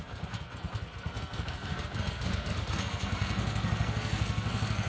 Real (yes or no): no